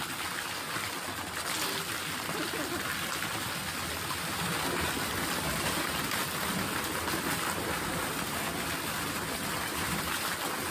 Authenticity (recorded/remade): recorded